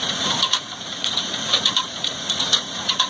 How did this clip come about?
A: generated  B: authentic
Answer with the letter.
A